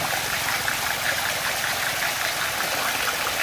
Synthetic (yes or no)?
no